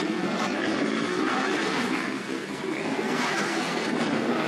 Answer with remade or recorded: remade